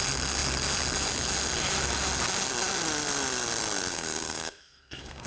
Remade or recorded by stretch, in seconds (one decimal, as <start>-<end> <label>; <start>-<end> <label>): 0.0-3.9 recorded; 3.9-5.3 remade